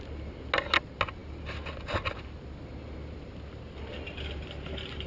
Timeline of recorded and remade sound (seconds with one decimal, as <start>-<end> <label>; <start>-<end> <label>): 0.0-5.1 recorded